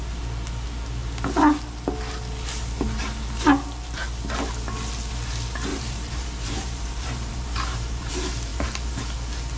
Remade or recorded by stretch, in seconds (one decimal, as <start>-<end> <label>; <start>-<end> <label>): 0.0-5.7 recorded; 5.7-8.1 remade; 8.1-8.5 recorded; 8.5-9.0 remade; 9.0-9.6 recorded